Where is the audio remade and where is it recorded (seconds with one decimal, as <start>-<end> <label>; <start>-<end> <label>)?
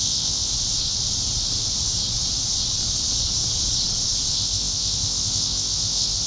0.0-0.5 remade; 0.5-4.3 recorded; 4.3-6.3 remade